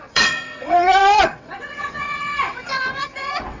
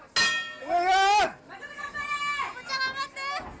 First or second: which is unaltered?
second